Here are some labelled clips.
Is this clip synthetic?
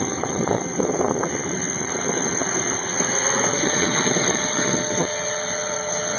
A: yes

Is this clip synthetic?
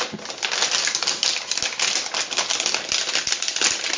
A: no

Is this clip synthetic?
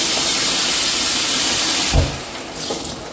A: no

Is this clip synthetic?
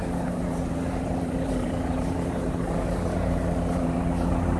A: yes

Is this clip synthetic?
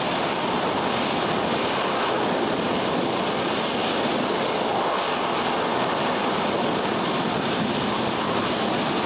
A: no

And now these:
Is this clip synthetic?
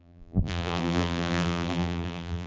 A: yes